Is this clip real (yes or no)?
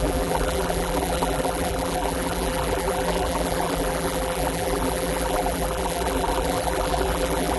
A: no